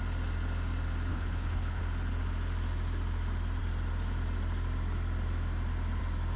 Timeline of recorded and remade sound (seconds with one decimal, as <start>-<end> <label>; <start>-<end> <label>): 0.0-1.1 recorded; 1.1-1.8 remade; 1.8-6.4 recorded